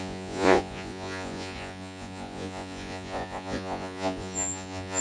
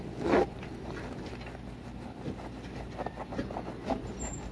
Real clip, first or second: second